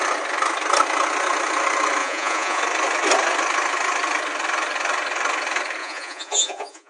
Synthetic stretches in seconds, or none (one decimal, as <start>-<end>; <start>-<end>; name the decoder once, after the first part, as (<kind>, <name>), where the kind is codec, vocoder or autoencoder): 2.0-2.6 (vocoder, Vocos); 5.8-6.9